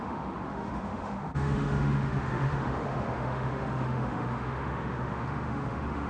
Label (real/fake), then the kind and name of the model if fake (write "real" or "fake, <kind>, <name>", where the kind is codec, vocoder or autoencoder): fake, autoencoder, DAC-VAE